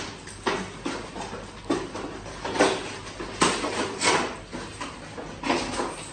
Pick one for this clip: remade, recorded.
recorded